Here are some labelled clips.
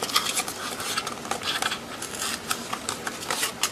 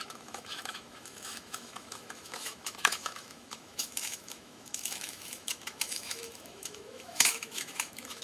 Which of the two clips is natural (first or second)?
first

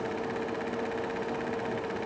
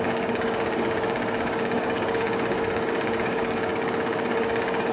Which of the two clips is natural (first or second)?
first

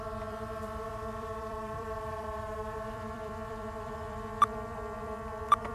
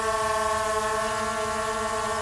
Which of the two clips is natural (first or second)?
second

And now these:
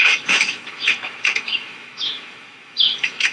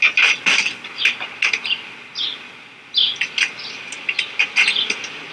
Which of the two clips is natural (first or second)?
second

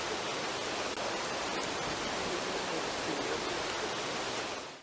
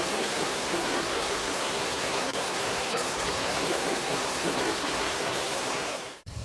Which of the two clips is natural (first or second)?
first